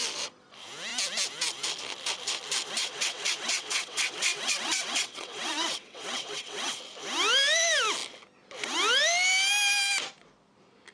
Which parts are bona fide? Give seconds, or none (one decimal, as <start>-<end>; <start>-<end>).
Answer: 0.0-2.8; 6.8-10.9